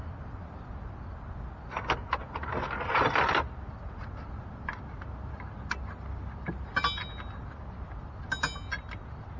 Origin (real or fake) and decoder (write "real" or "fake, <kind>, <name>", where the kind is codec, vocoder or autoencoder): real